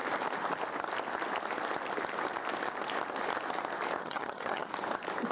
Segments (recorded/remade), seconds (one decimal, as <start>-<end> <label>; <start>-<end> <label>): 0.0-4.0 recorded; 4.0-4.7 remade; 4.7-5.3 recorded